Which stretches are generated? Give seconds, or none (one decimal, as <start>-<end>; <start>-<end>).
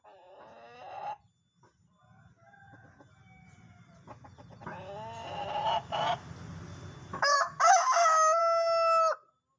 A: 7.1-8.4